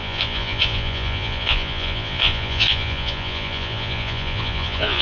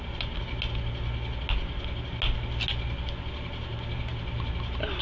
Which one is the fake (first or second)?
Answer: first